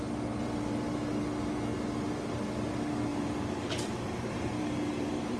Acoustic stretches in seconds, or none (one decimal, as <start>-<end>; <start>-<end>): 0.0-3.1